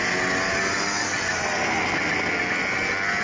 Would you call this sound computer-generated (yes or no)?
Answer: no